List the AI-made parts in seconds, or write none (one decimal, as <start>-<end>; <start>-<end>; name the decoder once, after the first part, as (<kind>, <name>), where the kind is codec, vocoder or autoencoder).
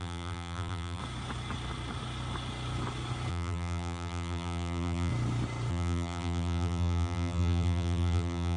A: 0.0-1.0 (vocoder, BigVGAN v2); 3.3-5.1; 5.7-8.6